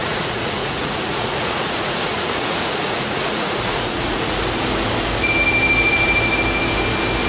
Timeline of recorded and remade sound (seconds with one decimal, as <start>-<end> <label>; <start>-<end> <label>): 0.0-4.4 remade; 4.4-7.3 recorded